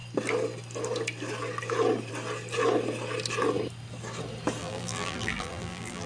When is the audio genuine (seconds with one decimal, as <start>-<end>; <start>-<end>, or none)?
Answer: 0.0-4.6